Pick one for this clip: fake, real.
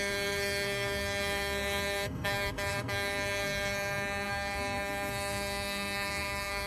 fake